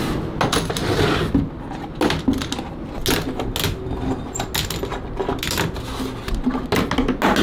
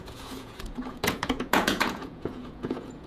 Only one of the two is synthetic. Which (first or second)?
second